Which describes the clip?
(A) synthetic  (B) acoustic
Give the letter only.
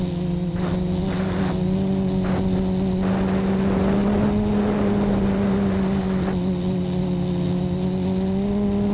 B